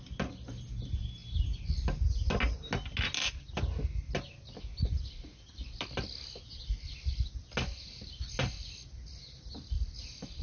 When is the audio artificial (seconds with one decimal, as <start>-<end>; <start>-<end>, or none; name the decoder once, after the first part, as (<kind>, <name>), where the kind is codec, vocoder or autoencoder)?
none